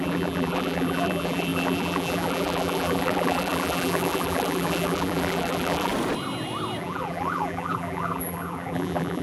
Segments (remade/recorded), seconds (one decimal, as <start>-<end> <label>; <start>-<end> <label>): 0.0-5.9 remade; 5.9-6.8 recorded; 6.8-9.2 remade